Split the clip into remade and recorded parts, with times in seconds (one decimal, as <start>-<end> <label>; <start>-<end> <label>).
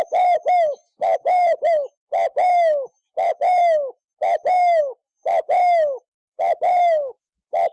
0.0-7.7 remade